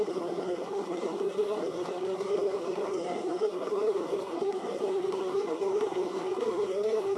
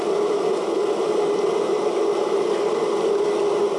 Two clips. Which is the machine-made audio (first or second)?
first